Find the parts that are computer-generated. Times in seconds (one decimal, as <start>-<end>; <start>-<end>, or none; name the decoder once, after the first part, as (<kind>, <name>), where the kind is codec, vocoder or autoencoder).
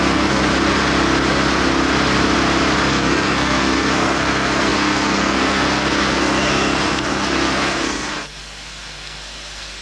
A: 0.0-0.4 (codec, SNAC); 2.9-9.8